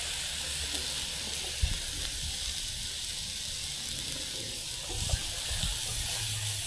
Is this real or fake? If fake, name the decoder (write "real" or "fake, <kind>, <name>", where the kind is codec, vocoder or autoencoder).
real